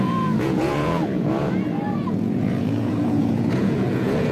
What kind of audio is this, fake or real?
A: fake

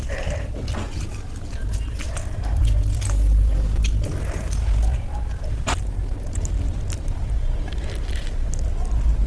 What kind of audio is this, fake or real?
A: real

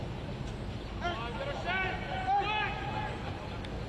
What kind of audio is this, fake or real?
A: real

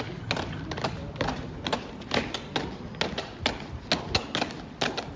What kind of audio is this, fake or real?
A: real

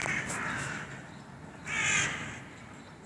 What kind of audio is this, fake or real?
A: real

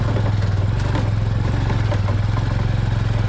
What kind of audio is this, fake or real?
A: real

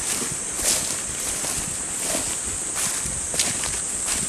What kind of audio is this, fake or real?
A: real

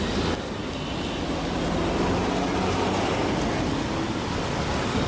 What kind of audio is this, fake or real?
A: real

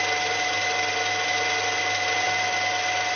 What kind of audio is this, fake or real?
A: real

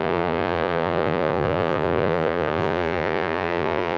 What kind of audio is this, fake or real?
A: fake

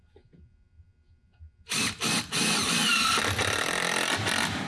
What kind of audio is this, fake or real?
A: real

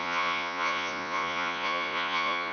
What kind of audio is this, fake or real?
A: fake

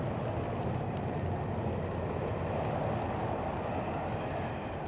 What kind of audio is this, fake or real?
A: real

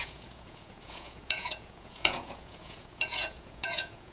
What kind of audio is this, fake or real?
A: fake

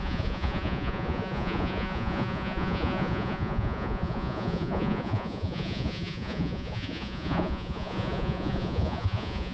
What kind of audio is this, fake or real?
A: fake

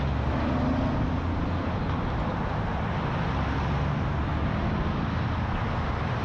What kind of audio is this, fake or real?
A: real